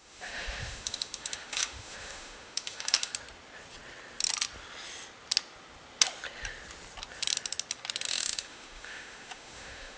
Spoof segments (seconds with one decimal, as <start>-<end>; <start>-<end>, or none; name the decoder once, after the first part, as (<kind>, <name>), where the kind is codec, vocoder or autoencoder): 0.0-3.1 (autoencoder, DAC-VAE); 8.1-10.0